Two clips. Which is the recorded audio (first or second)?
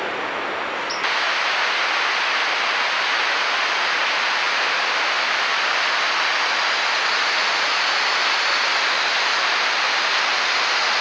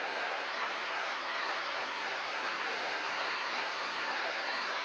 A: first